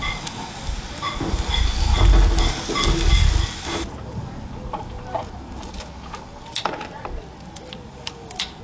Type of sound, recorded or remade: recorded